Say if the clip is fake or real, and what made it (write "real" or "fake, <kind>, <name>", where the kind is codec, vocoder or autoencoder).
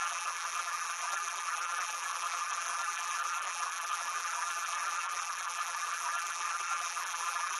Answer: fake, vocoder, BigVGAN v2